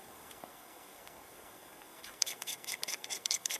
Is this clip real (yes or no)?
no